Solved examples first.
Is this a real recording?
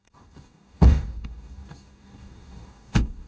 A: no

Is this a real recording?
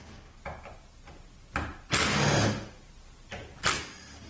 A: yes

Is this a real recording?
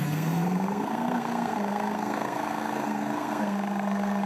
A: no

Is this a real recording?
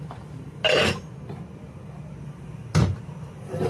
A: yes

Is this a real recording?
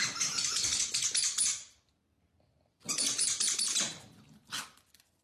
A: yes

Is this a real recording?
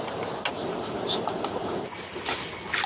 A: yes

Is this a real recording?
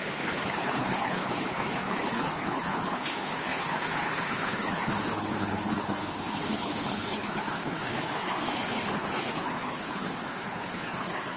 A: no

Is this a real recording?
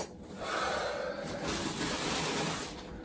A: yes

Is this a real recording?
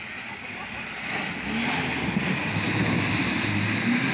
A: yes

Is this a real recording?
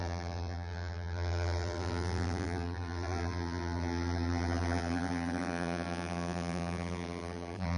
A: no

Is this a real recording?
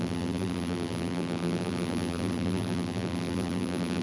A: no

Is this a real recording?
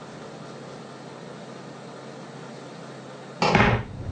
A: yes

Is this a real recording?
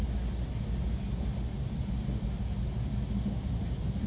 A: yes